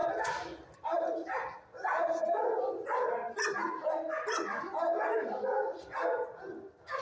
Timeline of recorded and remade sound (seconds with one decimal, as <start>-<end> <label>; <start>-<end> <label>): 0.0-7.0 recorded